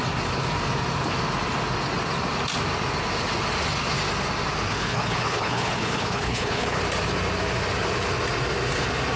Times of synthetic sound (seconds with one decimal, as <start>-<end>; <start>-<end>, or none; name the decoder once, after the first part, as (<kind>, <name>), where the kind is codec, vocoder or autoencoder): 4.7-6.8 (codec, HILCodec)